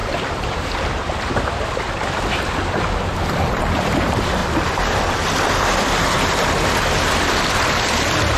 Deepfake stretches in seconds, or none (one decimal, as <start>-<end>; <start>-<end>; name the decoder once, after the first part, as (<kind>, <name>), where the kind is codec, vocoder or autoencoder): 0.0-8.4 (vocoder, BigVGAN v2)